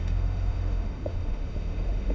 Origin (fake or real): fake